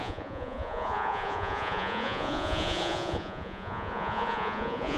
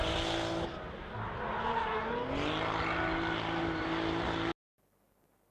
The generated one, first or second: first